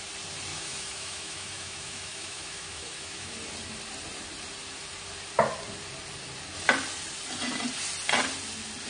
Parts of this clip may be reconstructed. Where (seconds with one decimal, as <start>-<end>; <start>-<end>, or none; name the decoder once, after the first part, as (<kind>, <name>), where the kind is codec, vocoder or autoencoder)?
0.5-3.3 (autoencoder, DAC-VAE)